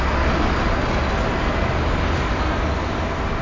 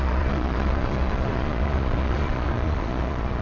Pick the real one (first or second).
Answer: first